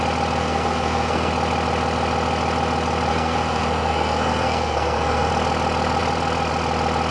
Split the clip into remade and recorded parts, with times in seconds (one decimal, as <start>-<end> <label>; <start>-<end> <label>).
0.0-0.4 recorded; 0.4-1.3 remade; 1.3-3.1 recorded; 3.1-5.3 remade; 5.3-7.1 recorded